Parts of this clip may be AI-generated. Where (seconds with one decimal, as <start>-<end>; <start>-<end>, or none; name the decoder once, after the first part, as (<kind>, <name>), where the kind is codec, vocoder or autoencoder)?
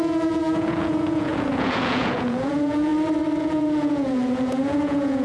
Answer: 0.0-2.9 (vocoder, Vocos); 3.4-5.2